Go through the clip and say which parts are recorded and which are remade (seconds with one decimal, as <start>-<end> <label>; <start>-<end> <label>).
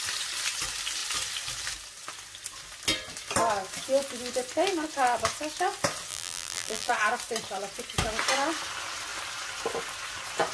0.0-6.1 recorded; 6.1-6.9 remade; 6.9-10.5 recorded